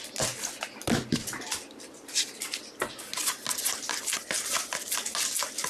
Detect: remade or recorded recorded